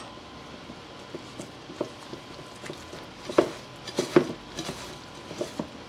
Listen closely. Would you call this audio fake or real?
real